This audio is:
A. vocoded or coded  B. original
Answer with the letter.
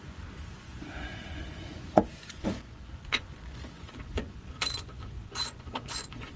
A